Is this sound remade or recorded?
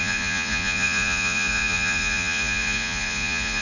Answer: remade